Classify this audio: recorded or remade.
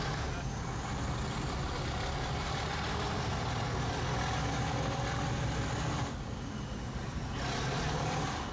recorded